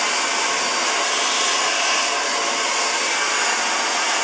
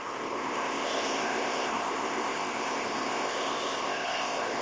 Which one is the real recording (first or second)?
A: first